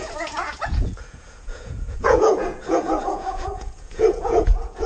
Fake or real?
fake